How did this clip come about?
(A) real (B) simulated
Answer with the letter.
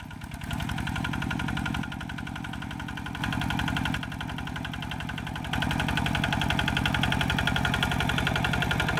A